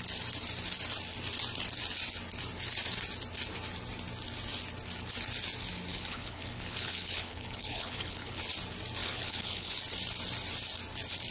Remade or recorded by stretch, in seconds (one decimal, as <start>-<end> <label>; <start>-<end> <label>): 0.0-5.9 recorded; 5.9-8.4 remade; 8.4-9.0 recorded; 9.0-9.7 remade; 9.7-11.3 recorded